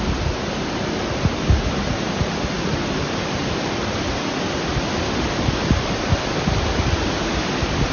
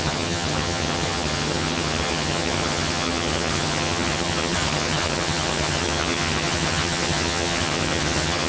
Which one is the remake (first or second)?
second